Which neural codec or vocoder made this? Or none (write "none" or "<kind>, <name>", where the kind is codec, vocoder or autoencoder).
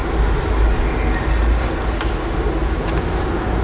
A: none